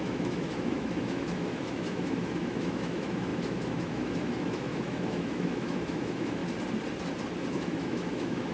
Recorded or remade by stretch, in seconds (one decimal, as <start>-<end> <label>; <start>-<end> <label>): 0.0-6.4 remade; 6.4-7.5 recorded; 7.5-8.5 remade